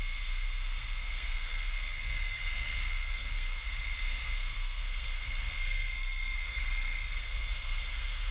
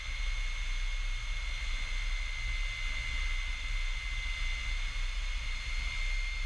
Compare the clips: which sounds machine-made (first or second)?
first